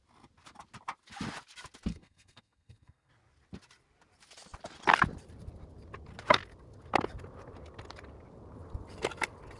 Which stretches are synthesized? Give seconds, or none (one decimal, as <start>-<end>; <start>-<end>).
1.9-3.1